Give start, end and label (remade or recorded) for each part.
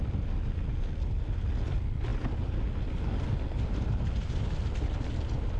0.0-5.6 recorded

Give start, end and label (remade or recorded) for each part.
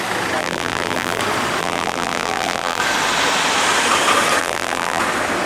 0.0-0.4 recorded; 0.4-1.2 remade; 1.2-1.6 recorded; 1.6-2.8 remade; 2.8-4.4 recorded; 4.4-5.0 remade; 5.0-5.5 recorded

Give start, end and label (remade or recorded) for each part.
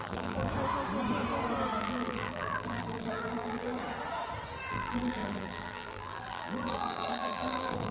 0.0-0.5 remade; 0.5-1.8 recorded; 1.8-3.8 remade; 3.8-4.7 recorded; 4.7-7.9 remade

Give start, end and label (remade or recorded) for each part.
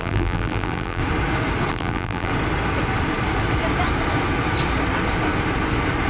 0.0-1.0 remade; 1.0-1.7 recorded; 1.7-2.3 remade; 2.3-6.1 recorded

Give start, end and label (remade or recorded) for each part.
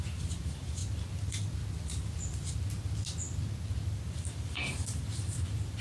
0.0-0.8 remade; 0.8-4.3 recorded; 4.3-5.8 remade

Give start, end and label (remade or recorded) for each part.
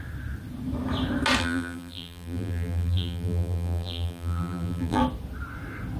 0.0-1.4 recorded; 1.4-5.0 remade; 5.0-6.0 recorded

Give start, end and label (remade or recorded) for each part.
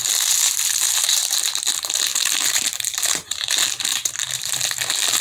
0.0-1.2 remade; 1.2-2.1 recorded; 2.1-3.5 remade; 3.5-3.9 recorded; 3.9-4.5 remade; 4.5-5.2 recorded